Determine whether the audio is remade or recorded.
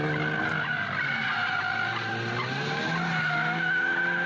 recorded